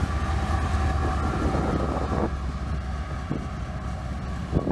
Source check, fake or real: real